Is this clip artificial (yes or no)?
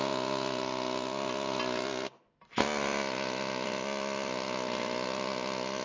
no